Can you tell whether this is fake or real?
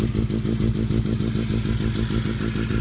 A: real